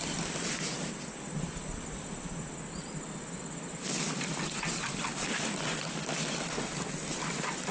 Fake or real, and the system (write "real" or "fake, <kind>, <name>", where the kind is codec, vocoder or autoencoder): real